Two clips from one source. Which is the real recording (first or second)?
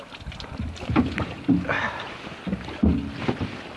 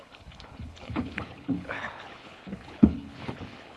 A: first